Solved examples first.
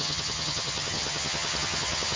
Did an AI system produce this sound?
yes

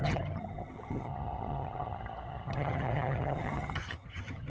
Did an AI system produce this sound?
yes